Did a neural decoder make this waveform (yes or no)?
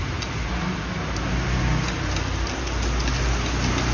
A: no